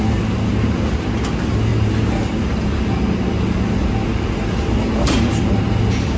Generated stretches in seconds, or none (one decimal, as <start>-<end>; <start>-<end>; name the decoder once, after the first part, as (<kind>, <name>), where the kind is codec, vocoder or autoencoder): 1.7-2.8 (vocoder, BigVGAN v2); 3.8-5.8